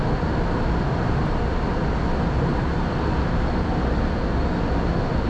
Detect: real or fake real